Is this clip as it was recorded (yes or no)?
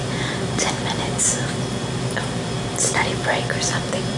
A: yes